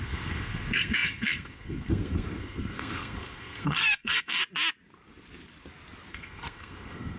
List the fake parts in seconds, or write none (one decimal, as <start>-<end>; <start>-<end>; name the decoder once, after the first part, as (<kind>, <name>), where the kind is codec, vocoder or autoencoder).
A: 0.0-4.4 (codec, SNAC); 6.1-7.2